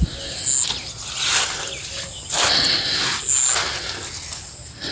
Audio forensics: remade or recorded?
recorded